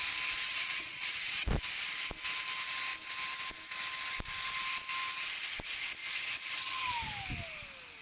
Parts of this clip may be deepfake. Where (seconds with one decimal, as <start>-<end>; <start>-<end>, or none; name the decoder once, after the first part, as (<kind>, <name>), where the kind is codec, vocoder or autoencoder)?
0.5-1.6 (vocoder, Vocos); 6.0-6.8